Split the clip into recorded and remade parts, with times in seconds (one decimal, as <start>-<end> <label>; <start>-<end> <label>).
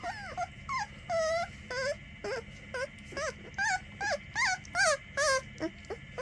0.0-6.2 recorded